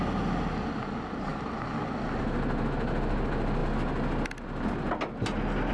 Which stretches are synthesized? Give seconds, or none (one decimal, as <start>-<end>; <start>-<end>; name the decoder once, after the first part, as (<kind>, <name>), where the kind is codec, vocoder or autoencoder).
none